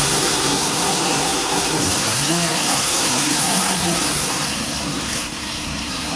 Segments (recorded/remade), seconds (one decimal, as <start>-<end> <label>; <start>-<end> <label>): 0.0-6.2 remade